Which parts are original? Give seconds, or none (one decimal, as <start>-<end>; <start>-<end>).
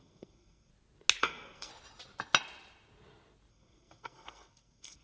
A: 0.7-1.2; 1.7-3.5